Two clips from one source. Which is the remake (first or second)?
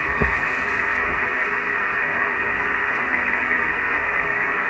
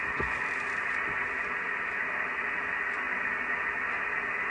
first